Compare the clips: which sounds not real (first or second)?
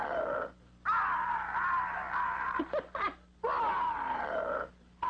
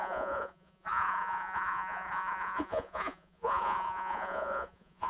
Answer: second